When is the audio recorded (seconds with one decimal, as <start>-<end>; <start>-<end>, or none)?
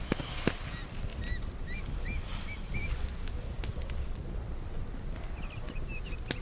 0.0-6.4